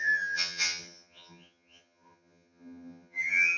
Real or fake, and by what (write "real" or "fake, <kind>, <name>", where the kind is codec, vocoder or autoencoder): fake, vocoder, HiFi-GAN